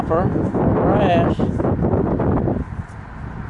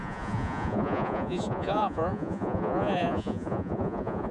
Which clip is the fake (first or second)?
second